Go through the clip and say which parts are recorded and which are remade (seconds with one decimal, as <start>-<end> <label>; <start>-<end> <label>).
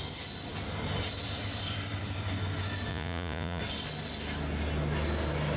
0.0-2.9 recorded; 2.9-3.6 remade; 3.6-5.6 recorded